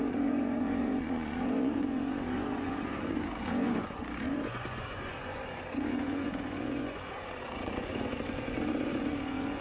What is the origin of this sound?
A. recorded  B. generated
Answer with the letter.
B